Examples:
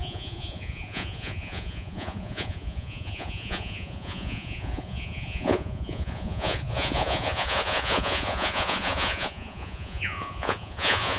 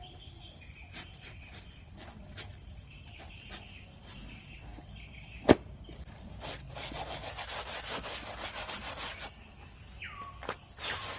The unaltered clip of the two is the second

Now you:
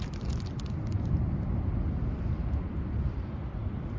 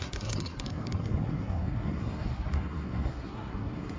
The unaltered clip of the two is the first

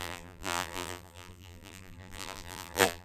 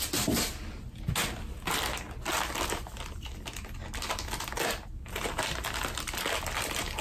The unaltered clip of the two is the second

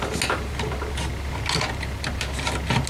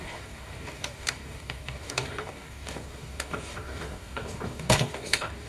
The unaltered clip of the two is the first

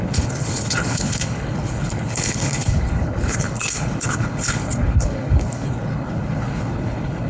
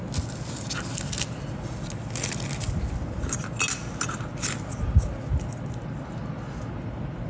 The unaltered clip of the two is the second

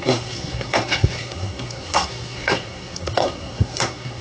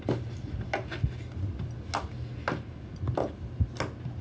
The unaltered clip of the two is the second